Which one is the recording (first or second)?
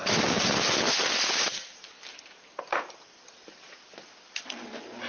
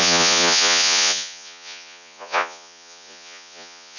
first